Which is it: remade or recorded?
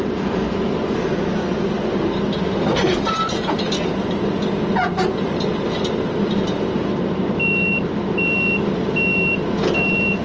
recorded